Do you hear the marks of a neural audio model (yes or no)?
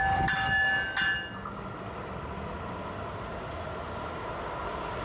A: no